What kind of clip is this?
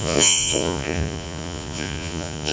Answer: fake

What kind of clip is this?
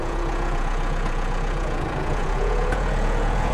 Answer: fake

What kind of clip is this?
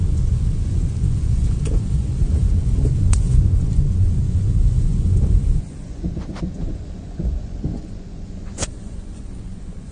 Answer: fake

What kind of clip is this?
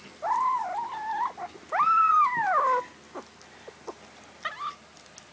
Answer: real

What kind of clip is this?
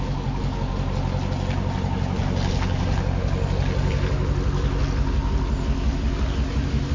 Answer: real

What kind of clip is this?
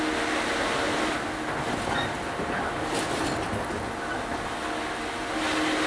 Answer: real